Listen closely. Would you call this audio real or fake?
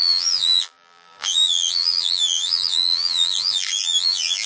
fake